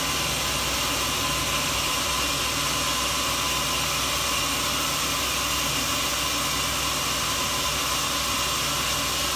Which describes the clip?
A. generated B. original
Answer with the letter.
B